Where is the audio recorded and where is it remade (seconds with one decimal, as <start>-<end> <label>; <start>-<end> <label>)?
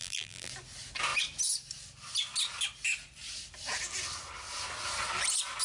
0.0-0.5 remade; 0.5-5.6 recorded